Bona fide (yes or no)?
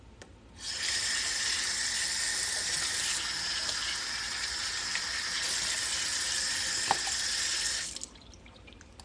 yes